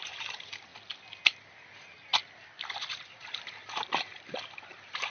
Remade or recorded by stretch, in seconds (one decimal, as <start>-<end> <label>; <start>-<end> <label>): 0.0-0.7 remade; 0.7-1.2 recorded; 1.2-2.2 remade; 2.2-2.9 recorded; 2.9-5.1 remade